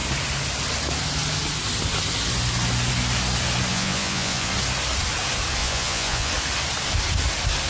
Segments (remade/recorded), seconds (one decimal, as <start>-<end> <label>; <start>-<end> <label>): 0.0-3.7 recorded; 3.7-4.5 remade; 4.5-5.6 recorded; 5.6-6.3 remade; 6.3-7.7 recorded